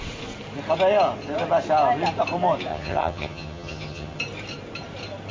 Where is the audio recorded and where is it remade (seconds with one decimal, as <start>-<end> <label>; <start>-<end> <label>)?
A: 0.0-2.7 recorded; 2.7-4.2 remade; 4.2-5.3 recorded